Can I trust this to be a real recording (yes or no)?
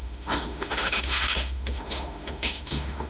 no